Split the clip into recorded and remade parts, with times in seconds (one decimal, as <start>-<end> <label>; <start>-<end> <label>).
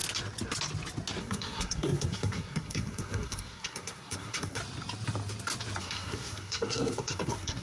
0.0-1.2 recorded; 1.2-4.6 remade; 4.6-5.8 recorded; 5.8-7.6 remade